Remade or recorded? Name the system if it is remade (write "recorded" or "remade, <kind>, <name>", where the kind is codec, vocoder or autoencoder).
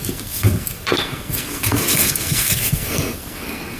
remade, codec, SNAC